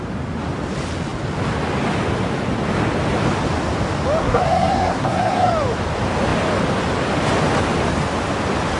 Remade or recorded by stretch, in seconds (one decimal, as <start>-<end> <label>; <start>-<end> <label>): 0.0-4.2 recorded; 4.2-5.5 remade; 5.5-8.8 recorded